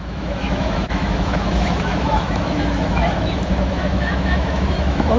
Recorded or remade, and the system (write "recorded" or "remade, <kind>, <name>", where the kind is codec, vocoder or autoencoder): remade, autoencoder, DAC-VAE